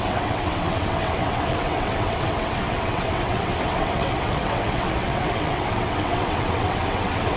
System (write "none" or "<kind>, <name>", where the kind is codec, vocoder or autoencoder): vocoder, WaveNeXt